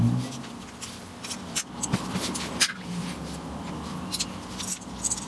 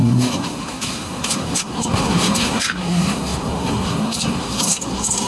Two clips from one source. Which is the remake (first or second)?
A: second